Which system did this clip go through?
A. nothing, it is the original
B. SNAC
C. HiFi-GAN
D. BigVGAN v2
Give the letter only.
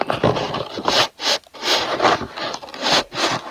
A